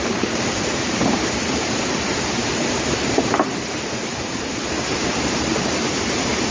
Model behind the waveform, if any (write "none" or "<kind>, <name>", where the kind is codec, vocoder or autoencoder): vocoder, BigVGAN v2